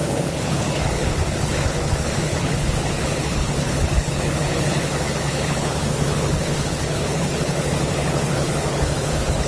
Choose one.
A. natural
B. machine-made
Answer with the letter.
B